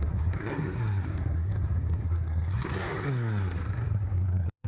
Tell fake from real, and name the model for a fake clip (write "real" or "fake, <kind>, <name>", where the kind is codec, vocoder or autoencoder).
fake, codec, SNAC